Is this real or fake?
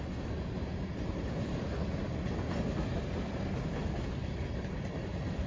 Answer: real